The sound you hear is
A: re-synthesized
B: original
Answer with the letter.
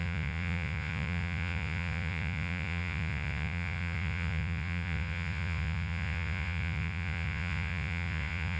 A